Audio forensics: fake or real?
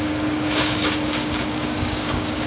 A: fake